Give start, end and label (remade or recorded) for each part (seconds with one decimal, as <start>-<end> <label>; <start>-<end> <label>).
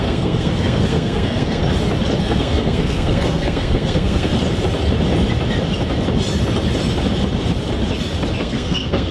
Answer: 0.0-1.6 remade; 1.6-2.2 recorded; 2.2-4.3 remade; 4.3-8.4 recorded; 8.4-9.1 remade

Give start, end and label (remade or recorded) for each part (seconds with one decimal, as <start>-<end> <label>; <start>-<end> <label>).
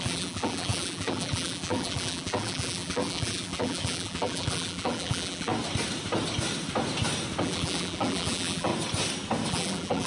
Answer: 0.0-5.5 remade; 5.5-7.4 recorded; 7.4-8.7 remade; 8.7-9.5 recorded; 9.5-10.1 remade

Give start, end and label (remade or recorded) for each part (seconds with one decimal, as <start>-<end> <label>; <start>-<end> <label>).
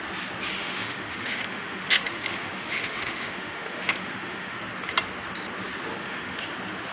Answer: 0.0-0.5 recorded; 0.5-4.6 remade; 4.6-6.0 recorded; 6.0-6.5 remade; 6.5-6.9 recorded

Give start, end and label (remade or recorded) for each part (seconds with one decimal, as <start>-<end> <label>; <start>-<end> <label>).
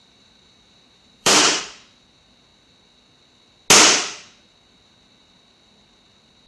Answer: 0.0-1.6 remade; 1.6-6.5 recorded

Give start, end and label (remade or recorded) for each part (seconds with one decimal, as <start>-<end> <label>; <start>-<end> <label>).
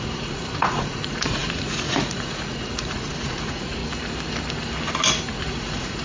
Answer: 0.0-3.8 remade; 3.8-5.3 recorded; 5.3-6.0 remade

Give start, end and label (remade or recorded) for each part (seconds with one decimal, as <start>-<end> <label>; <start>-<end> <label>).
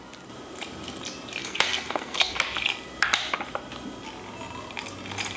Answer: 0.0-1.4 recorded; 1.4-2.4 remade; 2.4-5.4 recorded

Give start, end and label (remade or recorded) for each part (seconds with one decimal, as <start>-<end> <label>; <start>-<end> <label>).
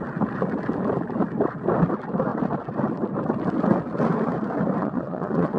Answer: 0.0-4.8 recorded; 4.8-5.6 remade